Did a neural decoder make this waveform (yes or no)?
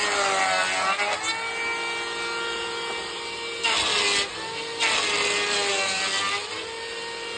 no